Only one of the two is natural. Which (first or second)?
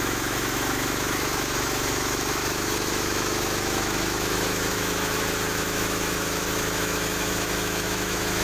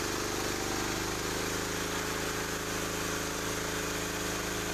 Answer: second